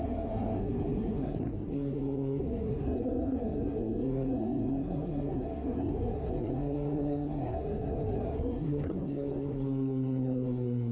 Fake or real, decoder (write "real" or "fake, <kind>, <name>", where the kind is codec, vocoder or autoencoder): fake, codec, SNAC